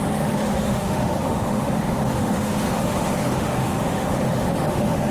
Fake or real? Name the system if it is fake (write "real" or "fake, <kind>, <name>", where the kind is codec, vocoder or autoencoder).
fake, autoencoder, DAC-VAE